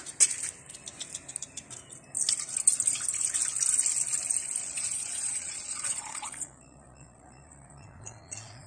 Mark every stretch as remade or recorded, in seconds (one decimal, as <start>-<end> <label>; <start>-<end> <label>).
0.0-4.6 recorded; 4.6-8.7 remade